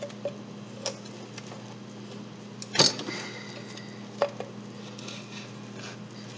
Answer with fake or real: real